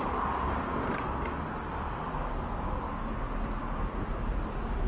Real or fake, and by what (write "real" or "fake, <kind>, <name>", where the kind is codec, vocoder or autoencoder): real